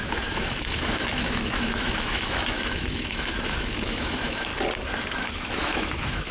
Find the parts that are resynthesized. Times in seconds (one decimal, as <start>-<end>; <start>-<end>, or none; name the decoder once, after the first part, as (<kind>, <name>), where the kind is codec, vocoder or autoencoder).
0.0-4.5 (autoencoder, DAC-VAE); 5.3-6.3